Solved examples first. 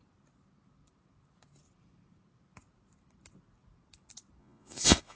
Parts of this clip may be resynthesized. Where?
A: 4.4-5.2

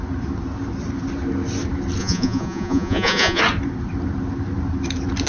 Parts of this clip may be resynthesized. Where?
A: 2.0-3.4

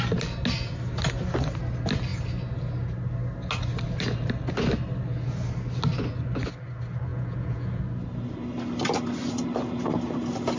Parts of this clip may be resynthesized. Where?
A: 7.1-7.8

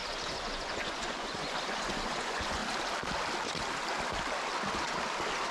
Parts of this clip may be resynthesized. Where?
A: 0.0-2.6